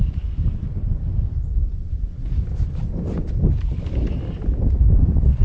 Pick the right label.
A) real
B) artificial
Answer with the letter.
A